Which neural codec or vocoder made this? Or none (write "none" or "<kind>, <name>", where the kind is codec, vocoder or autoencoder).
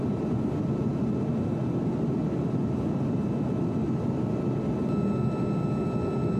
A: none